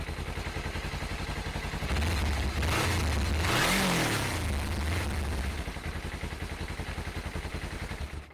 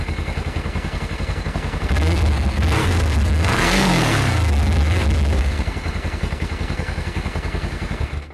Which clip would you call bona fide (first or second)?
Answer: first